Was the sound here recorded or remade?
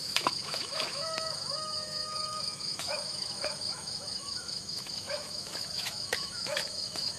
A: remade